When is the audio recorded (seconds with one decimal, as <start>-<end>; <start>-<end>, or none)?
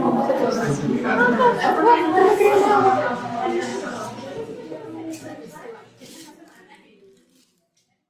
0.0-2.2; 2.7-8.1